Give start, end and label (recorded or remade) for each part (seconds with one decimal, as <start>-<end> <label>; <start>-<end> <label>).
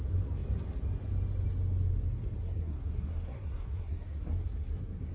0.0-2.4 recorded; 2.4-5.1 remade